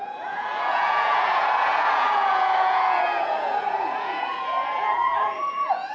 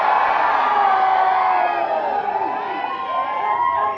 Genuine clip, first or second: second